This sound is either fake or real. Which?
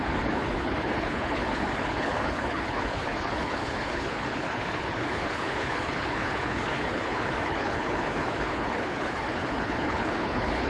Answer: fake